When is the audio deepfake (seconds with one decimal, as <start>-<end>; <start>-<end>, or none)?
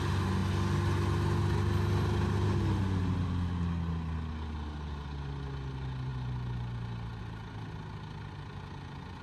none